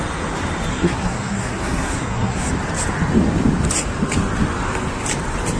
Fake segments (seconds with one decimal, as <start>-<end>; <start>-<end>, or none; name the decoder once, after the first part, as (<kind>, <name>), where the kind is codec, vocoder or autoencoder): 0.7-2.5 (codec, SNAC)